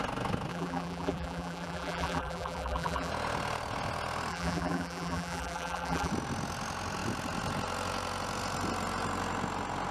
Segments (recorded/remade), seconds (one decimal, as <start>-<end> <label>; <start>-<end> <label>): 0.0-0.5 recorded; 0.5-3.1 remade; 3.1-4.3 recorded; 4.3-6.1 remade; 6.1-9.9 recorded